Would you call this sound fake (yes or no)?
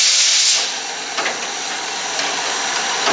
no